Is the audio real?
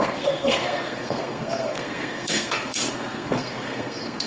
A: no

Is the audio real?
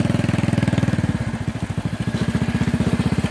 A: yes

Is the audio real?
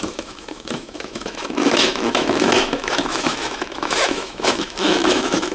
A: no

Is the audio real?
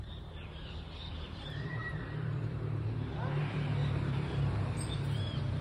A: no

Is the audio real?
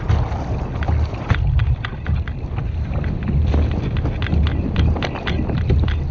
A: yes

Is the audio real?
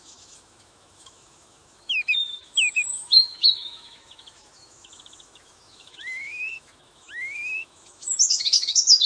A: no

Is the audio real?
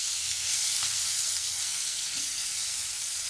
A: no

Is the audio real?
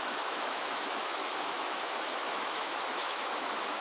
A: no